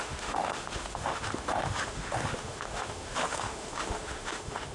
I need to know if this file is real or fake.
fake